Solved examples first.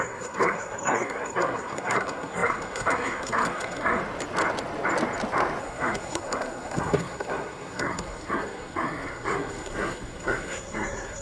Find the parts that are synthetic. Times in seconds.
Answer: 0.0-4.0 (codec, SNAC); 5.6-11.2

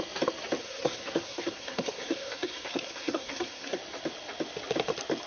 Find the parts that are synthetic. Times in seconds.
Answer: 0.6-3.8 (codec, SNAC)

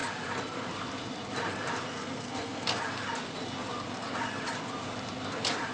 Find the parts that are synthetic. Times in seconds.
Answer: 1.9-2.8 (codec, SNAC)

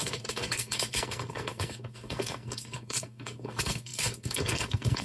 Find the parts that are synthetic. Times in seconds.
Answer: 0.0-5.0 (codec, SNAC)

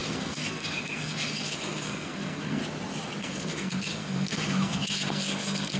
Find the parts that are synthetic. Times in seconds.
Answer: 0.0-2.6 (codec, SNAC); 3.2-5.8

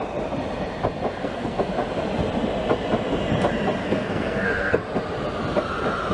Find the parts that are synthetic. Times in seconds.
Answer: 1.2-1.7 (codec, SNAC); 3.8-4.8

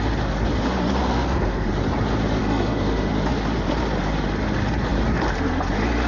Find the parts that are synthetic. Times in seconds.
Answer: 1.1-1.7 (codec, SNAC); 2.4-3.1